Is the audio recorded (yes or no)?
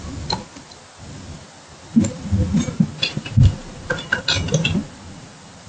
yes